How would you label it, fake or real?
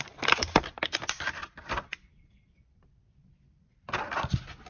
fake